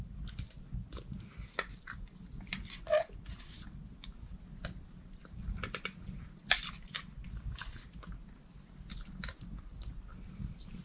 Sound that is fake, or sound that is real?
real